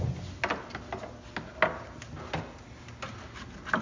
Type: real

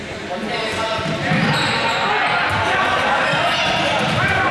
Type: real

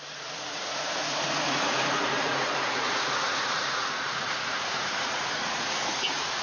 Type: fake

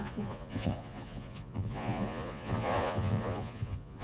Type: fake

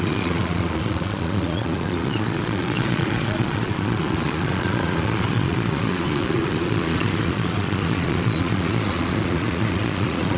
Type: fake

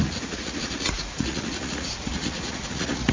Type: fake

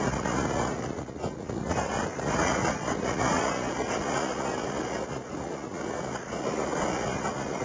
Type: fake